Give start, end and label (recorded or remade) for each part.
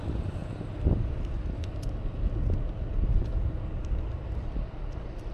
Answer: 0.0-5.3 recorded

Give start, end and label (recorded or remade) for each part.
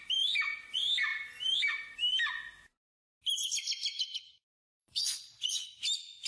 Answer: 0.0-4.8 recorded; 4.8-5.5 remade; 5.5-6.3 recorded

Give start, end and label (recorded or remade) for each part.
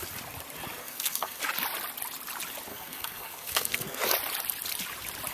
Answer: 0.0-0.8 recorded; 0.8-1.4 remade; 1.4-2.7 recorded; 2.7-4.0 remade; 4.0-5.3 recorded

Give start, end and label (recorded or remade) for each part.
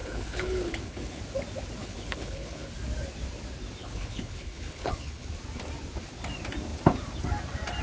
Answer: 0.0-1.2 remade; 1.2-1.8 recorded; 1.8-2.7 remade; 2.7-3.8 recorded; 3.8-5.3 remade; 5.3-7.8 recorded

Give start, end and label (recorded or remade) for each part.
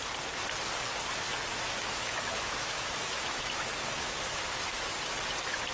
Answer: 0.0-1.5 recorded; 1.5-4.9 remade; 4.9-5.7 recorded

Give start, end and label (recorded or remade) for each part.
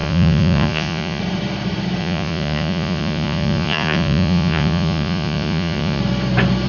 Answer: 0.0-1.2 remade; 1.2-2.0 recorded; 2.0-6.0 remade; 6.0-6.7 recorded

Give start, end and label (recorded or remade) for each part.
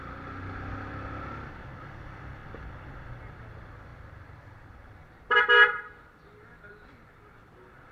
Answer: 0.0-7.9 recorded